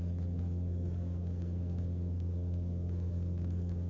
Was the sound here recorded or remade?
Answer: remade